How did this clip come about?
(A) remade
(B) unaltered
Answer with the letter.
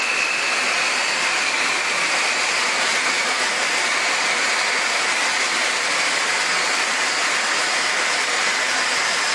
B